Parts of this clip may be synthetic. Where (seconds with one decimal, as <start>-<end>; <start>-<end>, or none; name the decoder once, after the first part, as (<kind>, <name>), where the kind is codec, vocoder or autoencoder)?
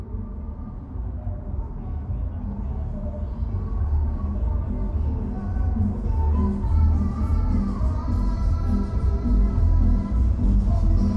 none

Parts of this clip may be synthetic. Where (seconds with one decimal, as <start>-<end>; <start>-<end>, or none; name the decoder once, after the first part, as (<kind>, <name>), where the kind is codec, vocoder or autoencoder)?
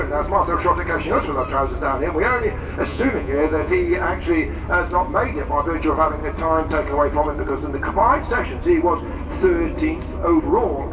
2.9-3.7 (vocoder, Vocos)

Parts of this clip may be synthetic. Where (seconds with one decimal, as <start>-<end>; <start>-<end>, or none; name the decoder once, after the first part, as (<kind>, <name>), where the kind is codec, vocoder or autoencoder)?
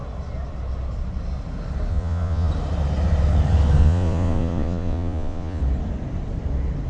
1.9-2.5 (vocoder, Vocos); 3.8-5.6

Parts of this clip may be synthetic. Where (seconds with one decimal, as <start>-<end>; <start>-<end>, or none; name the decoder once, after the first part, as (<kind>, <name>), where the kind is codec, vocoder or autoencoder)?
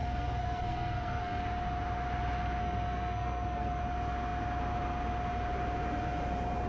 0.0-1.4 (codec, SNAC); 2.6-3.8